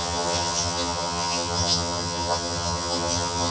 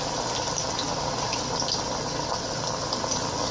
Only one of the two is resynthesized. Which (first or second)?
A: first